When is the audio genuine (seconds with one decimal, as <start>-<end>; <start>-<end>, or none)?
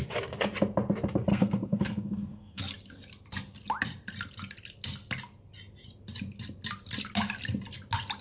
0.0-1.3; 2.6-8.2